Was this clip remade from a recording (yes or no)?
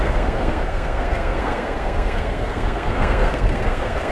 yes